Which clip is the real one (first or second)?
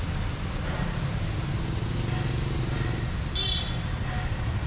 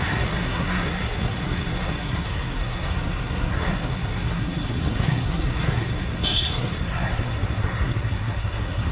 first